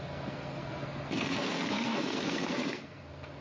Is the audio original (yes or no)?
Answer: no